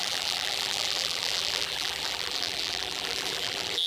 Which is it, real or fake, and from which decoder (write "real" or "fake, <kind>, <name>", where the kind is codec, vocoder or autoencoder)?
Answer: fake, vocoder, BigVGAN v2